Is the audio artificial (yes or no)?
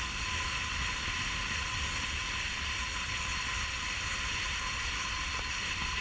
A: no